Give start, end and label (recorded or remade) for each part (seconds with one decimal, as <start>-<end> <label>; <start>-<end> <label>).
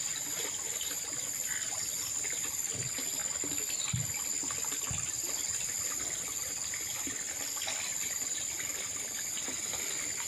0.0-10.3 recorded